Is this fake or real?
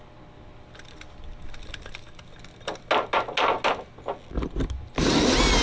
real